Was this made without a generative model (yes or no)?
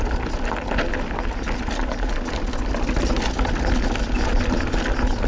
yes